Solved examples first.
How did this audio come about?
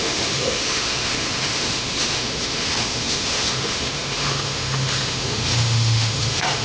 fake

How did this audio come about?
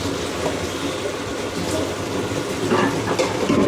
real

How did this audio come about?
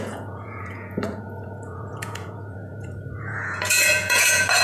fake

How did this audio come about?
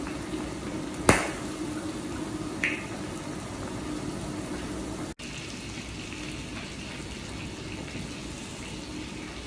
real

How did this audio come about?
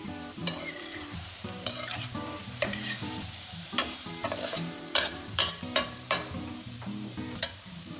fake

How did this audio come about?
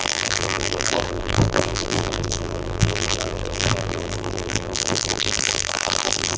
fake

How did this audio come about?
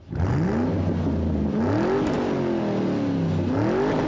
real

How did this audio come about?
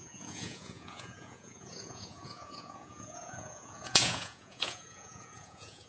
fake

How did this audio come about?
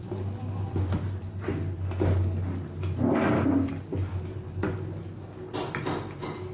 real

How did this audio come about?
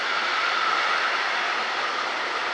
real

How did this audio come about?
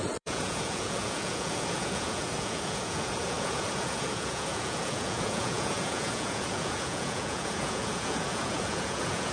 fake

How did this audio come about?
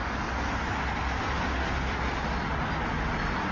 real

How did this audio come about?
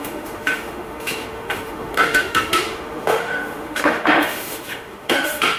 fake